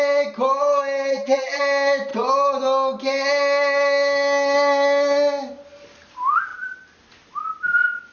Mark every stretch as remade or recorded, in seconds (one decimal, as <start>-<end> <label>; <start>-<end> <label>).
0.0-1.1 recorded; 1.1-1.6 remade; 1.6-8.1 recorded